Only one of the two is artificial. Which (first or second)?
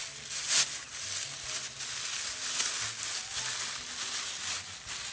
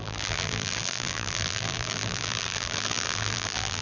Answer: second